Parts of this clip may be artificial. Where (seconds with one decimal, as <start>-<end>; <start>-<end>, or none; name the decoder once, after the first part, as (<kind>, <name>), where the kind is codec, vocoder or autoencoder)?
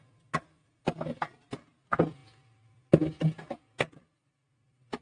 none